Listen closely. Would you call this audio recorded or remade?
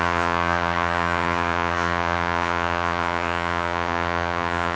remade